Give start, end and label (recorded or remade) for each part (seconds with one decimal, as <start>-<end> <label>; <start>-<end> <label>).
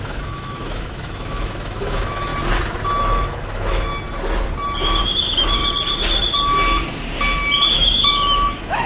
0.0-2.3 remade; 2.3-3.0 recorded; 3.0-3.9 remade; 3.9-4.8 recorded; 4.8-5.6 remade; 5.6-7.7 recorded; 7.7-8.9 remade